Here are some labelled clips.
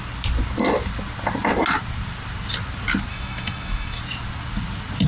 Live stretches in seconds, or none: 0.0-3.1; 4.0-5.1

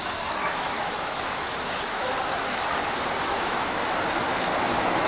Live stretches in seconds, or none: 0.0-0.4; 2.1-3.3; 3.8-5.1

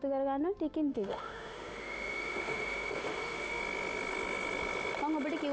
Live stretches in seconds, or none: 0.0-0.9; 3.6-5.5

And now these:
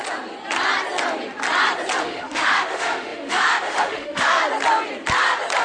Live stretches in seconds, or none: 0.0-2.0; 4.4-5.6

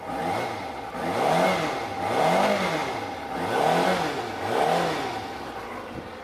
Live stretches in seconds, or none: 0.0-6.2

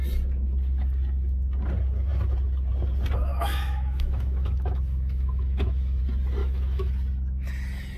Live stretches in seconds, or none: 0.0-3.3; 6.0-6.4; 6.9-8.0

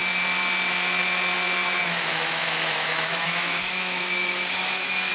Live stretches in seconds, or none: 0.0-1.8